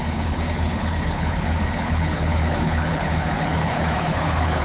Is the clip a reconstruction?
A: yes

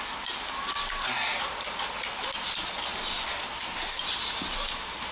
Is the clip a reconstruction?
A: no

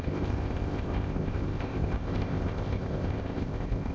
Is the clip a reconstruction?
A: yes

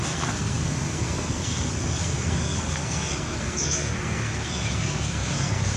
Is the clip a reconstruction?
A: yes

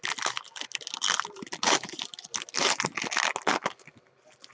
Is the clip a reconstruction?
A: no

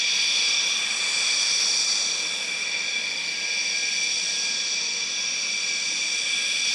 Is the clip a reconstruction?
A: no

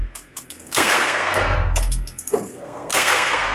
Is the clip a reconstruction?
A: yes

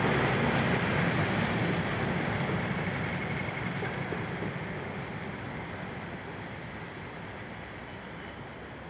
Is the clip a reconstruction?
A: no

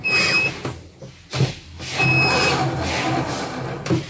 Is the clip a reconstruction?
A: no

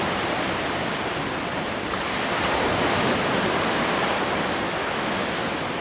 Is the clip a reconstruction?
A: no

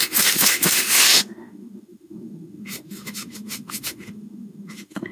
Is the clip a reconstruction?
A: yes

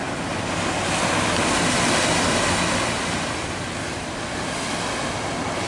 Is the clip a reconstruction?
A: no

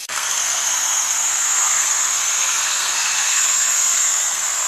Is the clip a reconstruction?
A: yes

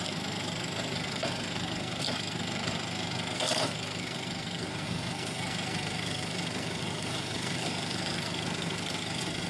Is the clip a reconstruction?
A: yes